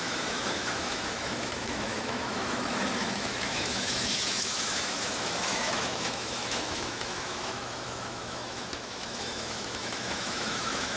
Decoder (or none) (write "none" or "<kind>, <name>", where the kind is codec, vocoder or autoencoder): autoencoder, DAC-VAE